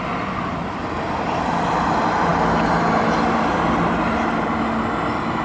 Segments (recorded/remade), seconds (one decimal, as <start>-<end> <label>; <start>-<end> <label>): 0.0-5.4 recorded